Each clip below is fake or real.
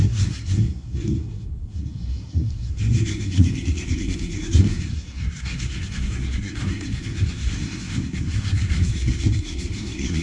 fake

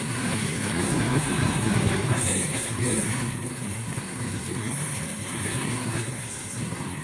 fake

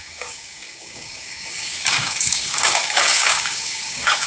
fake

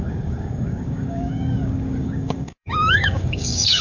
fake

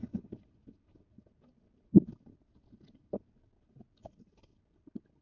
real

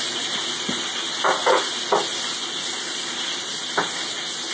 real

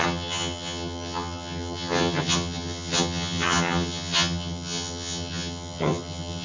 fake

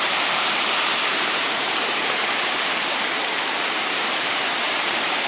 fake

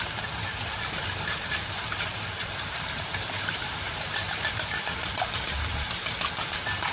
fake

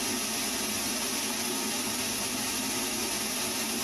real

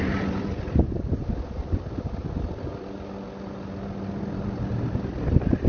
real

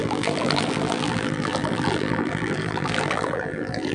fake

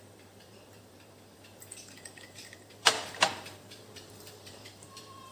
fake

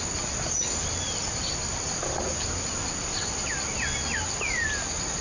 real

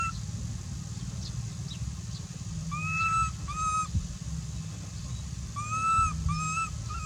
real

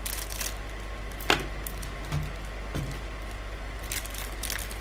real